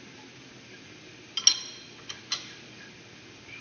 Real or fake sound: real